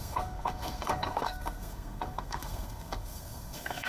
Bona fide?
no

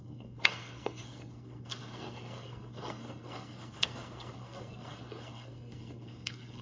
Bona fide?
no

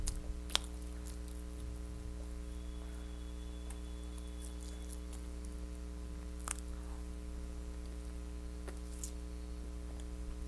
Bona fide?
yes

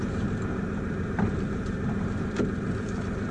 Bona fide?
yes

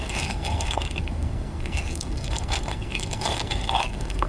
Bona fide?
no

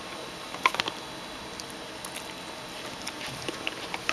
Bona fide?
yes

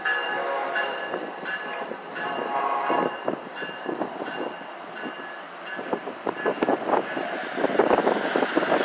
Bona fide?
yes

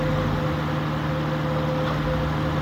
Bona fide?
yes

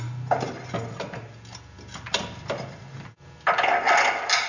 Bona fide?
yes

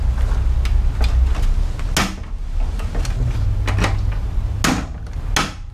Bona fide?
yes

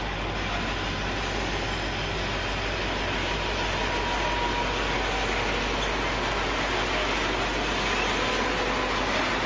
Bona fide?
yes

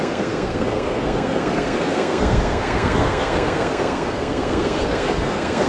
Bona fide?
no